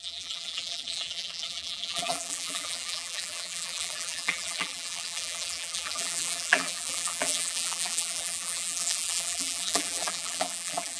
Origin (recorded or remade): remade